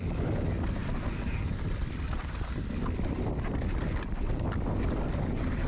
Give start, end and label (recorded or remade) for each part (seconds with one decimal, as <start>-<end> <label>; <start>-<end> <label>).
0.0-0.8 recorded; 0.8-4.2 remade; 4.2-5.7 recorded